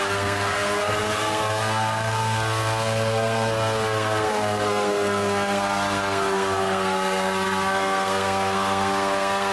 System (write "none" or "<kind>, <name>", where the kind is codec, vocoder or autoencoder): codec, SNAC